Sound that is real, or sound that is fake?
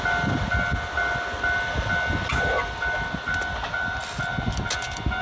real